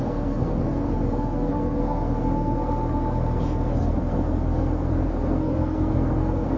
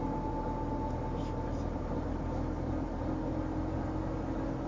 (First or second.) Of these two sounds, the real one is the second